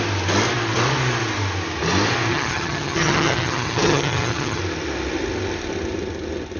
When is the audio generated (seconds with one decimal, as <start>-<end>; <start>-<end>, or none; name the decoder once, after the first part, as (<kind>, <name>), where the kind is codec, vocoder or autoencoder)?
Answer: 2.3-4.6 (vocoder, HiFi-GAN)